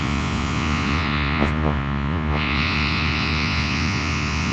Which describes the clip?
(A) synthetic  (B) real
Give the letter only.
A